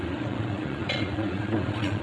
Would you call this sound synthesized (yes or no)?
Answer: yes